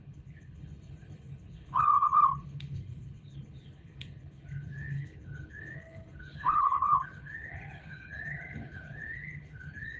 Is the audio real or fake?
fake